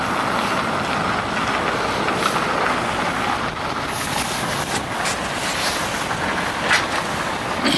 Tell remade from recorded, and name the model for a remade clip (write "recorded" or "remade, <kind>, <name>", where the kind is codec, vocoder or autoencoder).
recorded